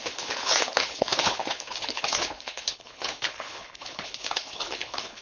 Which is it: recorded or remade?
remade